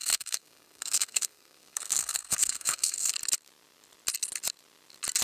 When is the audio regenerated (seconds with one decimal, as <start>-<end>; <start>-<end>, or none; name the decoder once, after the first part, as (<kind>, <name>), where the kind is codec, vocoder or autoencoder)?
0.0-3.1 (codec, SNAC)